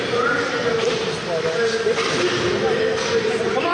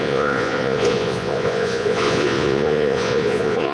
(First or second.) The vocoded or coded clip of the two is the second